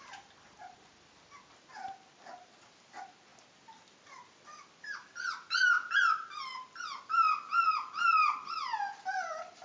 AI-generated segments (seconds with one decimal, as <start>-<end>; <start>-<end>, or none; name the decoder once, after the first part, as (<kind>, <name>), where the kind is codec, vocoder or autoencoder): none

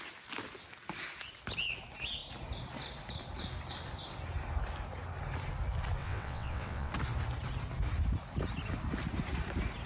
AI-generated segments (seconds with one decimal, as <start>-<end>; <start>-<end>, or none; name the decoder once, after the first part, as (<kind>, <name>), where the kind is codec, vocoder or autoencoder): 6.0-6.9 (vocoder, WaveNeXt)

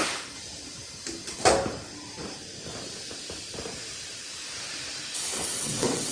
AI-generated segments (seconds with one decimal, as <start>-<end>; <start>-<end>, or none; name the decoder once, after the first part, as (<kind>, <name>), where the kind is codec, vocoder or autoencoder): 5.4-6.1 (vocoder, WaveNeXt)

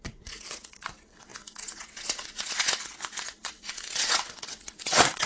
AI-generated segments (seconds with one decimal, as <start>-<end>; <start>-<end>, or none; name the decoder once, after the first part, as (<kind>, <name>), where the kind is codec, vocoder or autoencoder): 0.0-5.3 (vocoder, WaveNeXt)

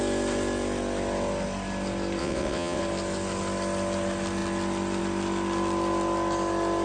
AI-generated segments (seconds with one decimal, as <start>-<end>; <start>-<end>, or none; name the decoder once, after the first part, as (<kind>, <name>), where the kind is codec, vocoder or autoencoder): 2.2-2.8 (vocoder, WaveNeXt)